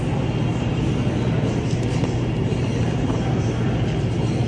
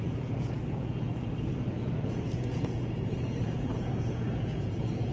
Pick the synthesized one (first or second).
second